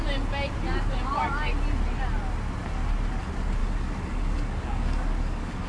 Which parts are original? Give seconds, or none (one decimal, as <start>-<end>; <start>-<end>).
0.0-3.6